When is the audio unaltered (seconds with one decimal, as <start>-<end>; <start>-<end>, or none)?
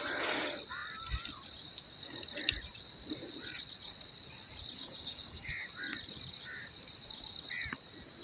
0.0-4.8; 5.5-8.2